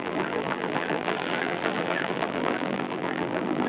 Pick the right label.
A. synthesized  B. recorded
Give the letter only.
A